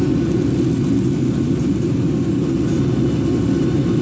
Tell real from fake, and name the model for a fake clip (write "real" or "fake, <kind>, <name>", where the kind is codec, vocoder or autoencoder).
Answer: real